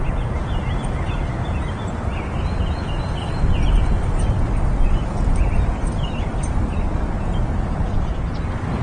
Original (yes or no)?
yes